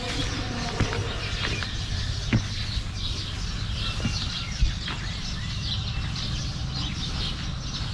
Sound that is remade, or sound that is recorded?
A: recorded